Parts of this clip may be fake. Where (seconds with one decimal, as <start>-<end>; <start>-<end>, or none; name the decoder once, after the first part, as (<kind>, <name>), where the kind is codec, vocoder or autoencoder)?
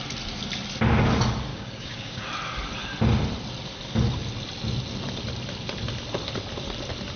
1.5-2.2 (codec, DAC)